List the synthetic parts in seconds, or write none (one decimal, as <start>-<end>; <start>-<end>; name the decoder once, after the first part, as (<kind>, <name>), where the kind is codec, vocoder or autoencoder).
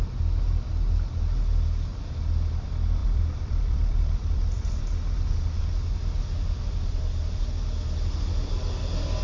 3.0-4.8 (vocoder, BigVGAN v2)